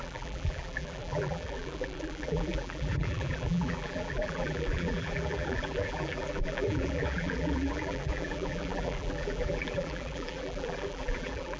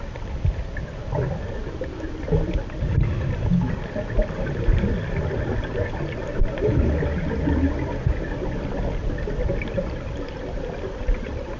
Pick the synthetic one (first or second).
first